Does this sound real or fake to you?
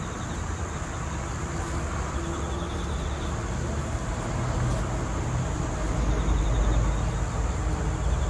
real